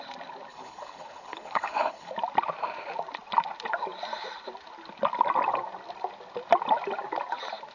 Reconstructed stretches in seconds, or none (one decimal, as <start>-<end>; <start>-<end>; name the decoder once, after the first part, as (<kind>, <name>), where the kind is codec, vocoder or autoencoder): 0.5-2.1 (codec, HILCodec)

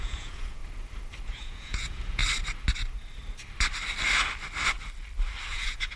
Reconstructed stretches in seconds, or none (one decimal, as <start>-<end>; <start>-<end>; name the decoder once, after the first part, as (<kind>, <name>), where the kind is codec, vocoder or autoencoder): 0.0-0.6 (vocoder, Vocos); 1.2-2.2; 5.5-6.0

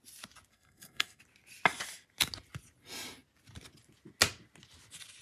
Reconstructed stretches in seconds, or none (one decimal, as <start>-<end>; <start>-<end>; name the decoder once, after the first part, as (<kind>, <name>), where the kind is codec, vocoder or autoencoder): 0.5-1.2 (codec, SNAC)

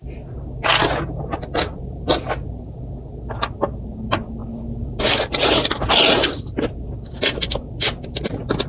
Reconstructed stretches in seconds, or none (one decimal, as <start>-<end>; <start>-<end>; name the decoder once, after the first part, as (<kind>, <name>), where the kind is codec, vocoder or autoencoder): none

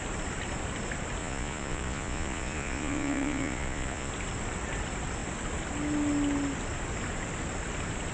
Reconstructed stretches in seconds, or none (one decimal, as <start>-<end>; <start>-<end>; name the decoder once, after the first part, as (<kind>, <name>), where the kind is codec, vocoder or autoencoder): 1.2-4.1 (vocoder, Vocos)

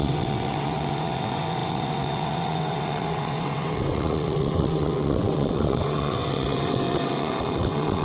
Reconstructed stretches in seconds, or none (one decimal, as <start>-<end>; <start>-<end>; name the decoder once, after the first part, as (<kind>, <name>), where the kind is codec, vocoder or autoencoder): 0.0-8.0 (vocoder, WaveNeXt)